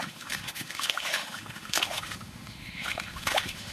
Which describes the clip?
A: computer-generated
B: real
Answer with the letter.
A